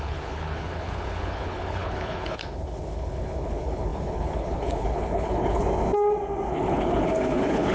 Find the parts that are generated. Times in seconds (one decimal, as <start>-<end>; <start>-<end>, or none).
0.0-5.6; 6.5-7.7